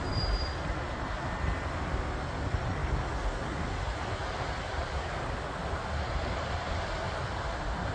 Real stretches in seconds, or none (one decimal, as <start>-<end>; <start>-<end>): 0.0-7.9